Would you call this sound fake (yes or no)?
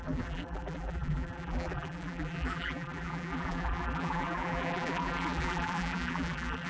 yes